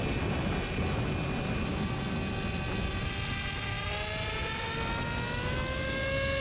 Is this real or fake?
real